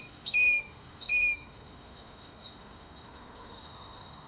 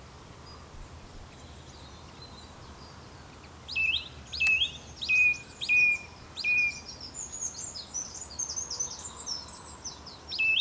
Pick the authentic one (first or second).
second